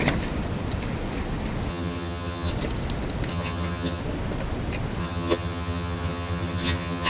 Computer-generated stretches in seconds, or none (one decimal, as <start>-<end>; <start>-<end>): 1.7-2.5; 3.3-4.0; 5.0-7.1